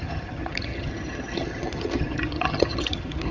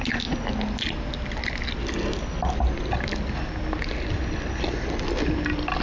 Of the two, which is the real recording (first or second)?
second